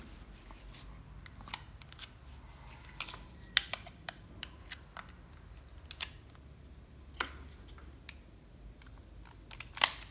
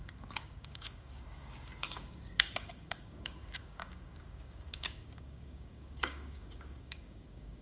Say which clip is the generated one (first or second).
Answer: second